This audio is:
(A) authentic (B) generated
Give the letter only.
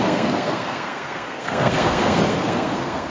B